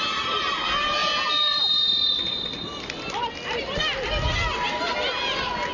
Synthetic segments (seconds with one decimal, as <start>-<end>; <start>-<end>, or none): none